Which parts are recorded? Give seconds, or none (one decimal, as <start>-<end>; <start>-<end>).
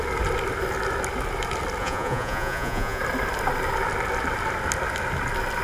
0.0-1.8; 3.0-5.6